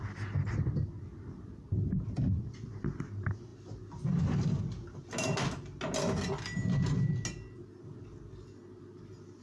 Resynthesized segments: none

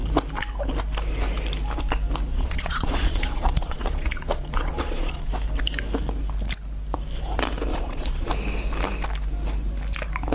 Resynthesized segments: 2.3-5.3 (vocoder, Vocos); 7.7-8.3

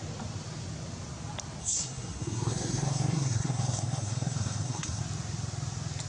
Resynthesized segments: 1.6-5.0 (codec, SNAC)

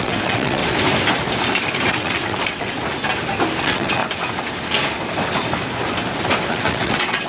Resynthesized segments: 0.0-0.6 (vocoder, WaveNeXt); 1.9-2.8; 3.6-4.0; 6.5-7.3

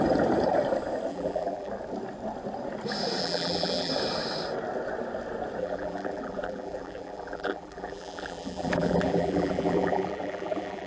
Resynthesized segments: 1.1-1.7 (vocoder, BigVGAN v2); 3.2-3.9; 5.6-10.9

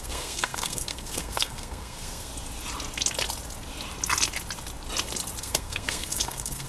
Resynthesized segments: 0.0-2.3 (codec, SNAC); 5.4-6.7